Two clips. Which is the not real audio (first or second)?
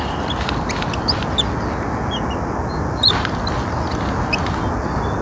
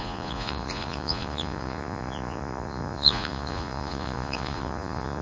second